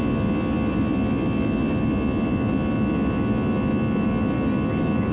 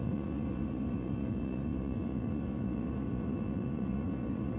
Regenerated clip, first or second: second